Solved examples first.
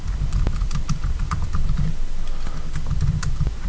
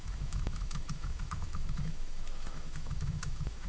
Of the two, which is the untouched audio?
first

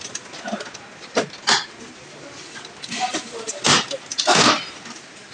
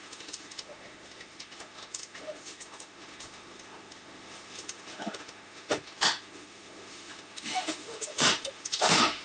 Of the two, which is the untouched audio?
first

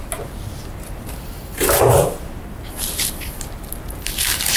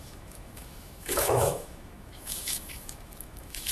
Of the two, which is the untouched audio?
first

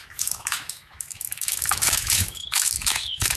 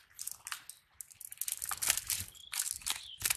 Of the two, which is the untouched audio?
second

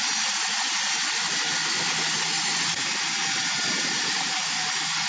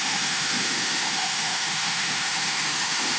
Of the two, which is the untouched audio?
first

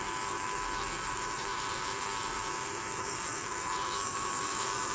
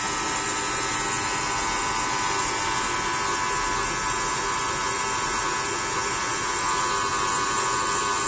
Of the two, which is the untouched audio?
second